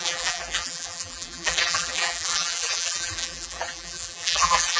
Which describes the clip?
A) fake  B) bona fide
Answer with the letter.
A